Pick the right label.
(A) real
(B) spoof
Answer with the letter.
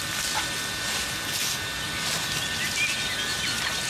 A